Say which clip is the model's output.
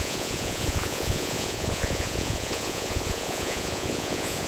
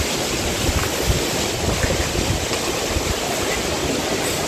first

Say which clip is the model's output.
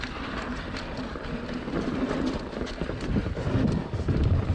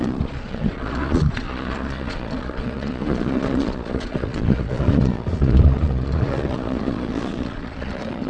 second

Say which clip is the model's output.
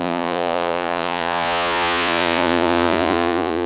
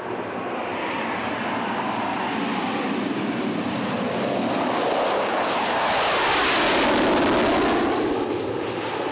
first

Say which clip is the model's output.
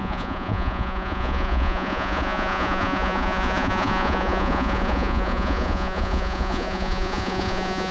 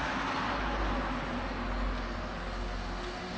first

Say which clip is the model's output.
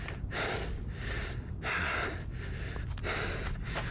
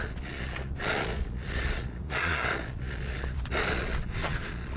second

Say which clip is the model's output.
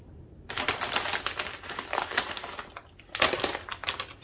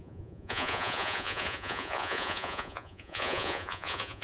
second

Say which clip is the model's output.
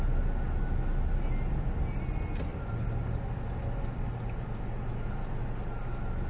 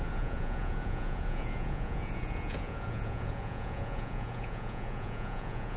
second